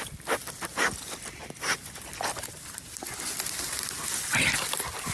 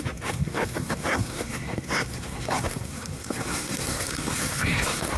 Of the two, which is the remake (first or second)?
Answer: second